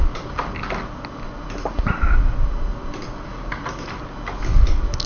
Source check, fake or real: real